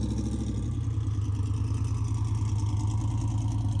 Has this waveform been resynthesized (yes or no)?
no